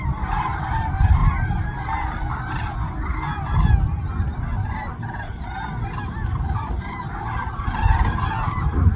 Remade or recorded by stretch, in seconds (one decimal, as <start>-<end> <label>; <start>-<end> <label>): 0.0-1.2 remade; 1.2-6.4 recorded; 6.4-9.0 remade